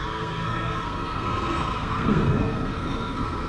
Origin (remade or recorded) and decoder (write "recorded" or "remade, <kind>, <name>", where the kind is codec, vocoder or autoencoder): remade, codec, SNAC